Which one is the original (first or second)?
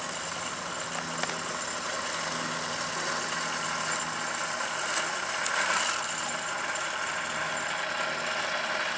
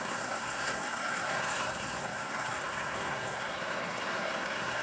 first